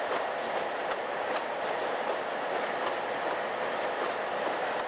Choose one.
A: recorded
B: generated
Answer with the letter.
A